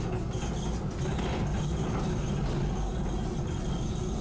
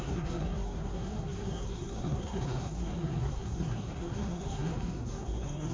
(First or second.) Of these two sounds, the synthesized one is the second